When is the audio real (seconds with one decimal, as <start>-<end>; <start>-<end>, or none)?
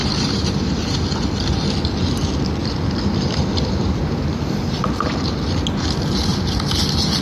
0.7-2.6; 4.6-7.2